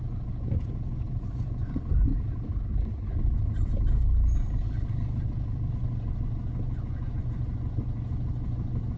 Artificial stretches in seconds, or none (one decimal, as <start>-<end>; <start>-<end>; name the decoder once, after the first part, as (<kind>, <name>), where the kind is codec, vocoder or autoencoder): 0.0-2.1 (vocoder, Vocos); 5.7-9.0